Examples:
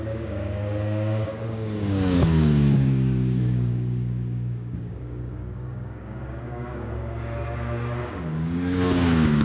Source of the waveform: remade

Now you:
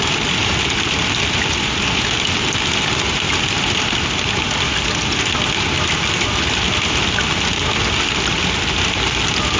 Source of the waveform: recorded